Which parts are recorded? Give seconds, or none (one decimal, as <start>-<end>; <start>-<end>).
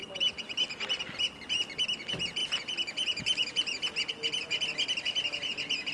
0.0-5.9